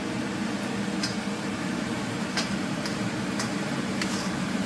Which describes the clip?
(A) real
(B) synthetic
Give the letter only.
B